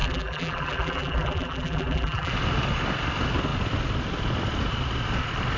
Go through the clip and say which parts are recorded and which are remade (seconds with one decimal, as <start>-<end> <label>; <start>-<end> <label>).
0.0-2.3 remade; 2.3-5.6 recorded